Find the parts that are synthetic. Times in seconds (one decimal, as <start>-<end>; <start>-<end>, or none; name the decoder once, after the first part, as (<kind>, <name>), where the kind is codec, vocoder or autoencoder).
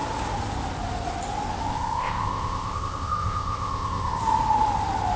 1.7-4.2 (codec, ZipCodec)